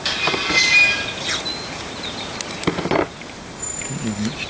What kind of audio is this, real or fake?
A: real